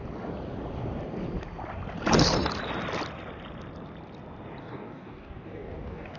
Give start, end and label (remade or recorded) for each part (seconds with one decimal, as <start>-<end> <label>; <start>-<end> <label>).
0.0-4.6 recorded; 4.6-6.2 remade